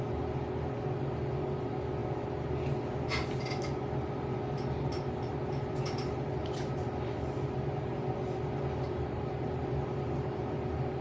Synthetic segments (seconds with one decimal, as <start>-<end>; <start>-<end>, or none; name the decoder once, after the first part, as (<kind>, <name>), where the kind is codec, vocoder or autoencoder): none